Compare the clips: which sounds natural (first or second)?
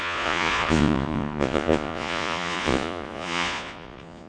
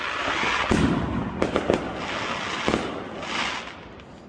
second